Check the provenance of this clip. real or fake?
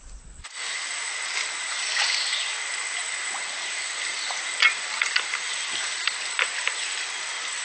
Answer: real